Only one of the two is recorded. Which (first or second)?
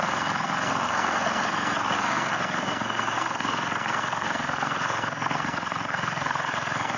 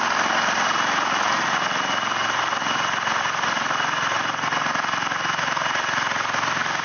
second